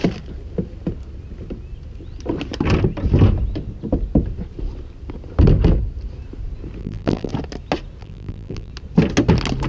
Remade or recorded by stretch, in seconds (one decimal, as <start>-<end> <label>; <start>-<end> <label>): 0.0-6.8 recorded; 6.8-7.3 remade; 7.3-8.0 recorded; 8.0-8.7 remade; 8.7-9.7 recorded

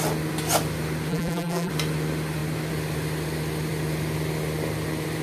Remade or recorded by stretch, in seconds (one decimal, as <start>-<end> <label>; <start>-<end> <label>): 0.0-1.1 recorded; 1.1-1.7 remade; 1.7-5.2 recorded

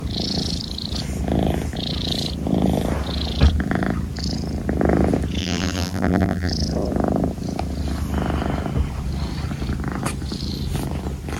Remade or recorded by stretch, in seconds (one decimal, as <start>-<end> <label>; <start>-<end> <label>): 0.0-5.4 recorded; 5.4-6.5 remade; 6.5-11.4 recorded

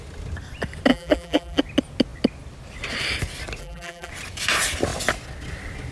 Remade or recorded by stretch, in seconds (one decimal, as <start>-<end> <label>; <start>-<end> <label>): 0.0-0.9 recorded; 0.9-1.6 remade; 1.6-3.6 recorded; 3.6-4.1 remade; 4.1-5.9 recorded

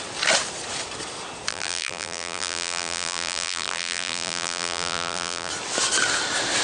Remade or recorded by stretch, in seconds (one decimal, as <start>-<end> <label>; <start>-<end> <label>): 0.0-1.5 recorded; 1.5-5.5 remade; 5.5-6.6 recorded

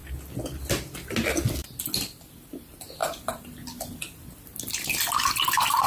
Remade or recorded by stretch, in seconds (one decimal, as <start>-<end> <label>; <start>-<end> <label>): 0.0-5.9 recorded

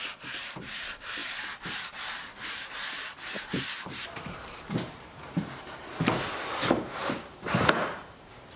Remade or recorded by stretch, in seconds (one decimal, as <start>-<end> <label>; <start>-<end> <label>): 0.0-8.6 remade

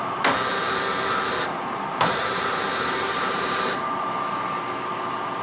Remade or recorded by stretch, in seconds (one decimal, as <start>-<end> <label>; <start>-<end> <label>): 0.0-0.5 recorded; 0.5-3.7 remade; 3.7-5.4 recorded